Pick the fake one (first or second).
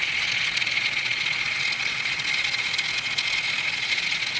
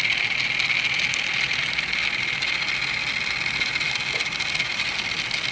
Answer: first